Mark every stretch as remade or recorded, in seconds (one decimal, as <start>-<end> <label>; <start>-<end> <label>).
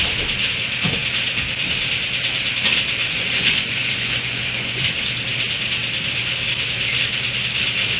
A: 0.0-3.0 recorded; 3.0-4.8 remade; 4.8-8.0 recorded